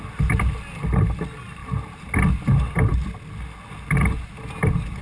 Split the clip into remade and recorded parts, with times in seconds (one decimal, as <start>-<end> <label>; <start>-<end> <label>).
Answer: 0.0-5.0 recorded